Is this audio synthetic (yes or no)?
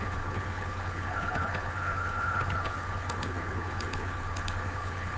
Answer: yes